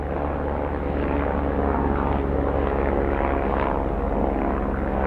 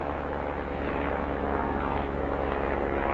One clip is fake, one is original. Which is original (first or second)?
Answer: first